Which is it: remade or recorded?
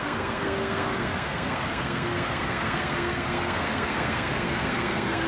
remade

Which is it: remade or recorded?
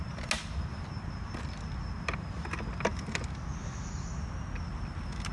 recorded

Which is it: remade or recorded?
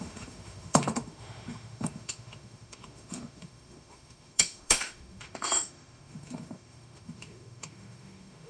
remade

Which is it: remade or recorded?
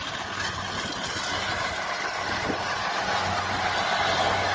recorded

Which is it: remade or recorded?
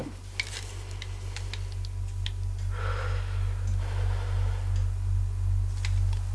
recorded